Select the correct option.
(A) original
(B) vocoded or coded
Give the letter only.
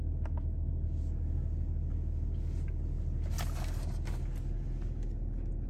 A